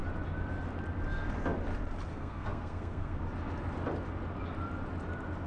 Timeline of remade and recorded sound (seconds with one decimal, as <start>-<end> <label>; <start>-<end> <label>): 0.0-2.1 recorded; 2.1-3.2 remade; 3.2-5.5 recorded